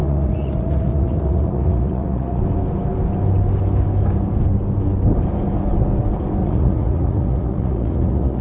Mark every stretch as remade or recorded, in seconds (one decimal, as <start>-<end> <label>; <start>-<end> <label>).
0.0-2.4 remade; 2.4-6.4 recorded; 6.4-8.4 remade